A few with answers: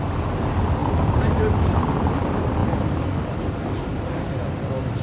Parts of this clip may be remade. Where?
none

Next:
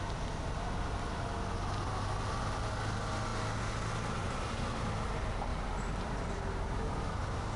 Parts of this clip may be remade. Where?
none